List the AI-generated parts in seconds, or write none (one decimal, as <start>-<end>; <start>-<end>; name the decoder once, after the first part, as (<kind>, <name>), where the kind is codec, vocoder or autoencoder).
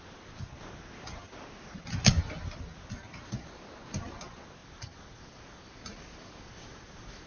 4.6-7.3 (vocoder, BigVGAN v2)